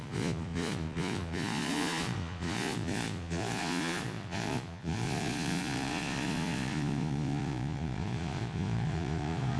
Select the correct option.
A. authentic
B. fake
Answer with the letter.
B